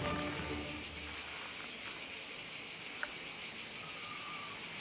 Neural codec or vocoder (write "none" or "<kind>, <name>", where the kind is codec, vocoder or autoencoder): none